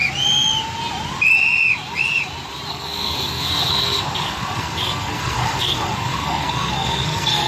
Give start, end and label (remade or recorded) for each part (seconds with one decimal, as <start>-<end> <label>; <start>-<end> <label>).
0.0-2.7 recorded; 2.7-7.5 remade